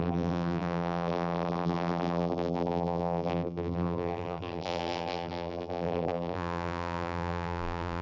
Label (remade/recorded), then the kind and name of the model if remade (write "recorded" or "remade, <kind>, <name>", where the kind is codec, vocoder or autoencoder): remade, vocoder, BigVGAN v2